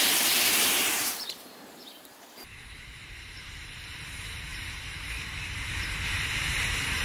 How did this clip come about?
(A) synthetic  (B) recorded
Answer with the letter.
A